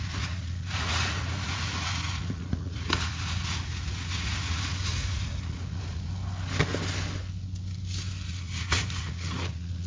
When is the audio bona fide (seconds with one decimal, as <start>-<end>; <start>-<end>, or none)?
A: 6.1-8.3